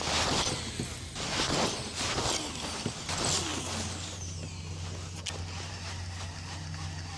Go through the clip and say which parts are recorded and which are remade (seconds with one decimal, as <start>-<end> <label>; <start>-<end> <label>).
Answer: 0.0-7.2 recorded